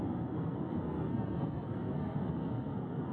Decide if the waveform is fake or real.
fake